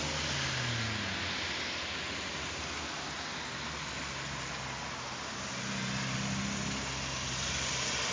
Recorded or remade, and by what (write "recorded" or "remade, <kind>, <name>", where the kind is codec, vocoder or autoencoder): recorded